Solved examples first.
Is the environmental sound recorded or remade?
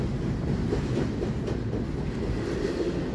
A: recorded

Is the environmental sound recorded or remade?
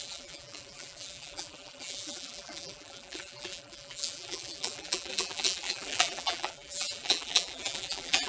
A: remade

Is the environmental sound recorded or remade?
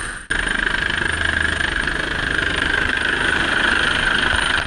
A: recorded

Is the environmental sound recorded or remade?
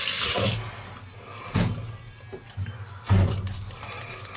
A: recorded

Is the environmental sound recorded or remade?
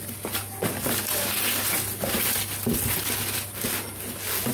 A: recorded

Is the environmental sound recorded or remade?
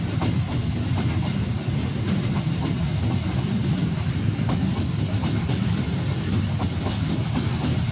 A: remade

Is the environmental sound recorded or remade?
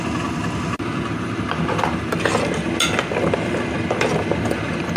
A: recorded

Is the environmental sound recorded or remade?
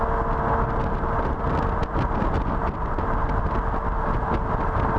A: recorded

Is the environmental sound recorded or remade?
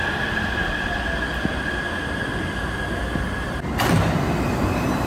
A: remade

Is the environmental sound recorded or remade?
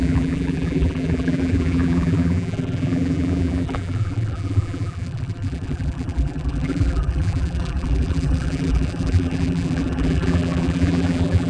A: remade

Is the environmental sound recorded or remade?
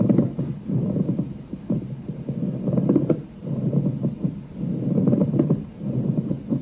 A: remade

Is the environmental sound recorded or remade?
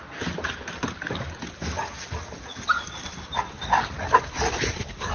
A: recorded